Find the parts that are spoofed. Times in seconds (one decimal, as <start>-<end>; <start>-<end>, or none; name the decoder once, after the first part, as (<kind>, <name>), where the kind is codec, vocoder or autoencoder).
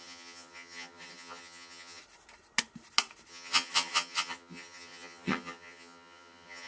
0.0-2.0 (vocoder, HiFi-GAN); 3.3-6.7